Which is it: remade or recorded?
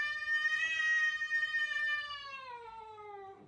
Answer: recorded